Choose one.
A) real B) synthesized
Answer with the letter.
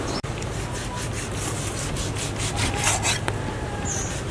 A